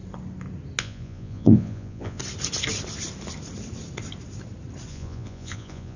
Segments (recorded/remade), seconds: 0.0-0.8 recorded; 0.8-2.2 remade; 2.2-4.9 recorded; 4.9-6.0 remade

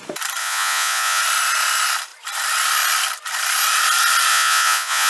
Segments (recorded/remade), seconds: 0.0-0.4 recorded; 0.4-1.2 remade; 1.2-4.3 recorded; 4.3-5.1 remade

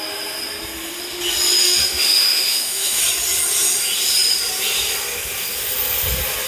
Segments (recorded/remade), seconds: 0.0-1.6 recorded; 1.6-3.0 remade; 3.0-6.5 recorded